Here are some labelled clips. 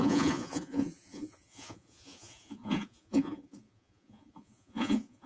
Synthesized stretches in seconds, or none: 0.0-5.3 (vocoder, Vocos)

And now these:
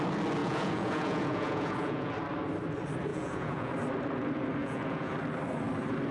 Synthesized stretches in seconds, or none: 0.4-2.1 (vocoder, Vocos); 3.1-3.7; 4.6-5.1